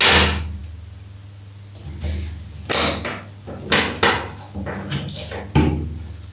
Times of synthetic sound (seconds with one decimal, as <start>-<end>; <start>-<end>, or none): none

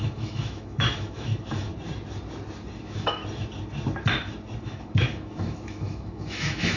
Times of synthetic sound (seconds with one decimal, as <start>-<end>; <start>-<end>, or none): 0.0-1.7; 2.8-3.2; 4.6-6.8

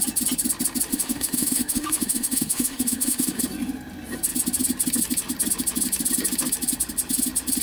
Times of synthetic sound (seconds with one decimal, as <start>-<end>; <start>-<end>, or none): 0.9-3.4

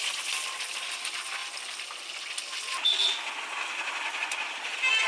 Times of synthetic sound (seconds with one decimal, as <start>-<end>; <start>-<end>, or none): none

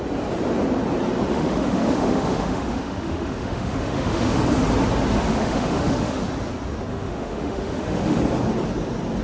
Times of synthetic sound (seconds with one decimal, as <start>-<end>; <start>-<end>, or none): 1.3-4.4; 5.3-6.2; 6.9-8.2

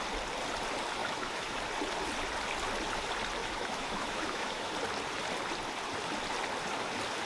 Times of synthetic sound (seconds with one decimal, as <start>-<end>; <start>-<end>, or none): 1.0-1.6; 3.4-4.7

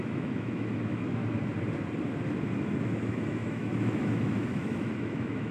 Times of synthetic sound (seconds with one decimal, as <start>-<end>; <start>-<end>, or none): 0.0-1.2; 2.5-5.5